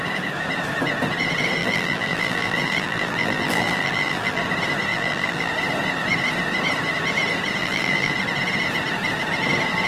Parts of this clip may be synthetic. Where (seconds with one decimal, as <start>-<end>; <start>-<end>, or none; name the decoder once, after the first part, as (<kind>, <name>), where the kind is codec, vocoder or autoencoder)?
1.6-4.4 (vocoder, BigVGAN v2); 4.9-5.5; 7.6-8.1